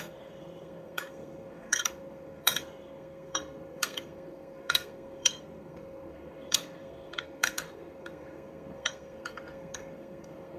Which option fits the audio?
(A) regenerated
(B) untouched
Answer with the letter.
A